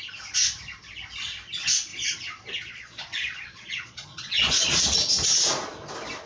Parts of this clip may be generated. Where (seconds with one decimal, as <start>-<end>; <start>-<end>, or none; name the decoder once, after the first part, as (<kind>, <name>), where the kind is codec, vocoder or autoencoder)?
1.9-4.8 (vocoder, Vocos)